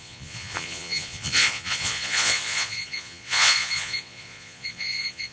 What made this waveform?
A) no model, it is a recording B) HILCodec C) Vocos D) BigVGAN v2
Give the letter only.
C